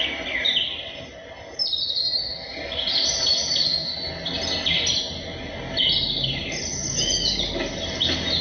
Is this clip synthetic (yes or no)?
no